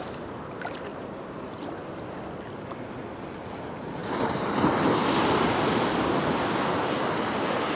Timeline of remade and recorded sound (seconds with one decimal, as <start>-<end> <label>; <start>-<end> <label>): 0.0-0.9 recorded; 0.9-1.9 remade; 1.9-7.8 recorded